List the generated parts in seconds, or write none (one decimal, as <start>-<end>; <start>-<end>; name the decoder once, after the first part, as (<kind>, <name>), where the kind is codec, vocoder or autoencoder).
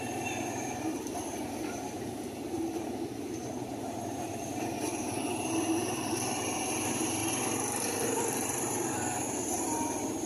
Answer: 0.0-7.2 (vocoder, BigVGAN v2); 8.3-10.3